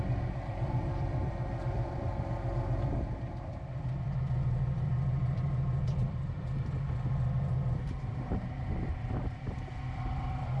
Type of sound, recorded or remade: remade